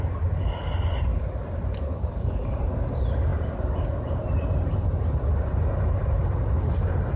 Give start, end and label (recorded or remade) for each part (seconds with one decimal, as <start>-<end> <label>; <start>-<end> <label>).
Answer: 0.0-1.9 recorded; 1.9-2.6 remade; 2.6-7.2 recorded